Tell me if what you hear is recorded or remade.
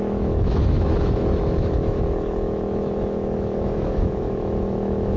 remade